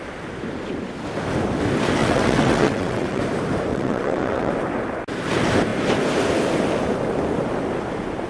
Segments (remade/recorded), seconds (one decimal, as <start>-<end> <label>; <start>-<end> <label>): 0.0-2.0 recorded; 2.0-3.2 remade; 3.2-3.7 recorded; 3.7-4.5 remade; 4.5-8.3 recorded